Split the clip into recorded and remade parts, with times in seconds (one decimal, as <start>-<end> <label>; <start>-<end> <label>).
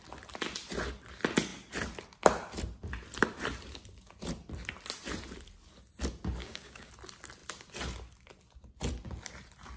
0.0-6.4 recorded; 6.4-6.9 remade; 6.9-9.8 recorded